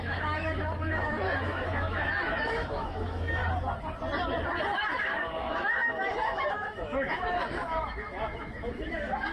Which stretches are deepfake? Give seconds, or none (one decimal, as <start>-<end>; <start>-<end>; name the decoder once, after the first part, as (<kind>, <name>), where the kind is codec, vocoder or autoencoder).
0.0-3.4 (autoencoder, DAC-VAE); 5.0-9.3

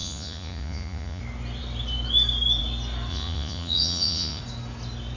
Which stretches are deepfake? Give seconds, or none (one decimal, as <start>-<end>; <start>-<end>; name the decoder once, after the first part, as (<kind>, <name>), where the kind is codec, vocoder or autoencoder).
0.0-1.2 (vocoder, Vocos); 3.1-4.4